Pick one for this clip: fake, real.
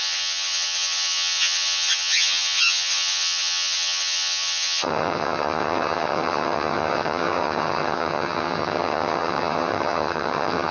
fake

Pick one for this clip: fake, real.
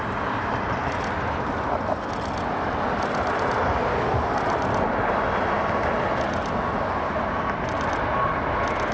real